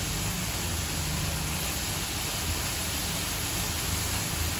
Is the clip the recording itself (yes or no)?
yes